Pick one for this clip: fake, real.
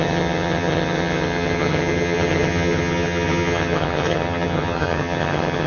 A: fake